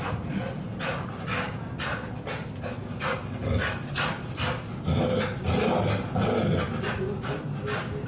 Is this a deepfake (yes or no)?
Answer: no